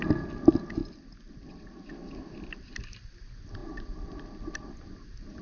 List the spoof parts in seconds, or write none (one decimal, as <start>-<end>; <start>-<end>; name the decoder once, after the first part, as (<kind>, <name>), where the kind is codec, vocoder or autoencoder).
none